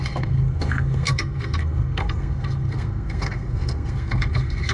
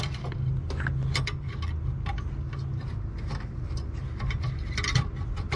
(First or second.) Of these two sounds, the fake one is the first